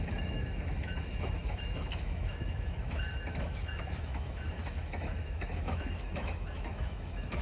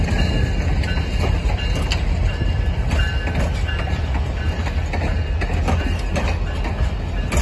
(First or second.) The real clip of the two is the second